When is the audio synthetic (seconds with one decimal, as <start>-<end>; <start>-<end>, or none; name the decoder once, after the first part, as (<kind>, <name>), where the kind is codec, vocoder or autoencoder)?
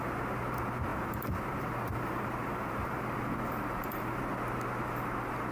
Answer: 0.9-4.2 (vocoder, BigVGAN v2)